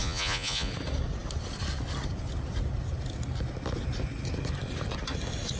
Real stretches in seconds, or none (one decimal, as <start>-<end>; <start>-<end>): 0.7-5.6